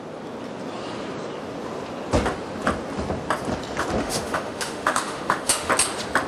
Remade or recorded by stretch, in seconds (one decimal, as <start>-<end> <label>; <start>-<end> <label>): 0.0-4.0 recorded; 4.0-5.7 remade; 5.7-6.3 recorded